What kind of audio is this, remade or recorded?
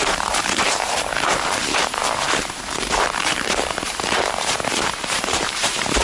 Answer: remade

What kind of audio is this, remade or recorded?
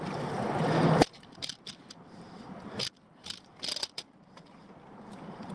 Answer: remade